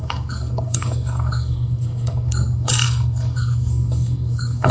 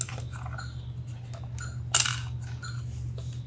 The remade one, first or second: first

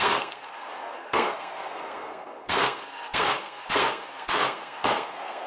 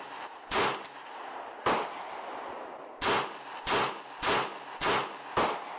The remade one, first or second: first